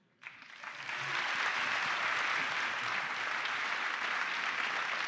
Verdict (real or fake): real